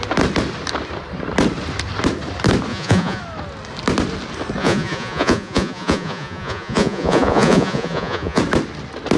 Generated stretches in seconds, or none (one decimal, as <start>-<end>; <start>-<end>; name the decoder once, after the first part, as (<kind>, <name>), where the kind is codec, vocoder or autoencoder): 2.7-3.2 (vocoder, Vocos); 4.6-8.4